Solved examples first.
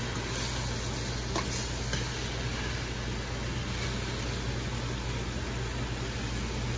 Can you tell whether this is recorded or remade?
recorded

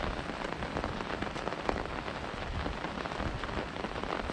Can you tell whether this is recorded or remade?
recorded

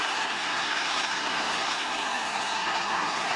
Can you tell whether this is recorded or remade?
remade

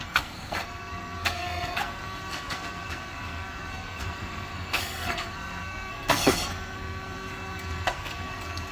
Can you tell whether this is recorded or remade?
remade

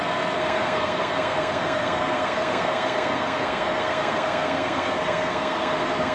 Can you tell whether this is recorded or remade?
remade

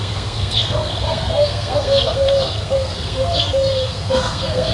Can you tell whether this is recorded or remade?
remade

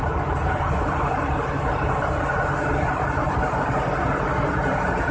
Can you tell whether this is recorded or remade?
recorded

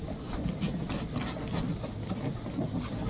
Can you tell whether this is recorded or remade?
recorded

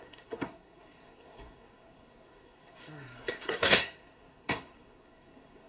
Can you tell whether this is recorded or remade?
remade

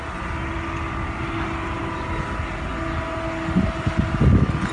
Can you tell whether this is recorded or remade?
recorded